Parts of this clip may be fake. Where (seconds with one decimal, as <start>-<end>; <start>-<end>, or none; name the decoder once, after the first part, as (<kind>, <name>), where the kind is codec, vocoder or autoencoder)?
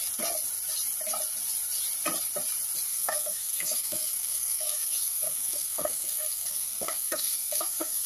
2.9-8.1 (codec, SNAC)